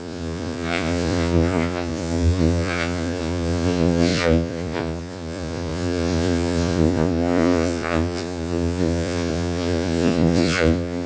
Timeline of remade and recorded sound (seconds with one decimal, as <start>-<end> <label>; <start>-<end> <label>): 0.0-11.1 remade